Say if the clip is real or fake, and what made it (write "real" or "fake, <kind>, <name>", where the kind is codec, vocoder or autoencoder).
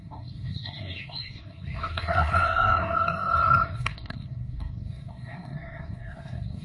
fake, codec, SNAC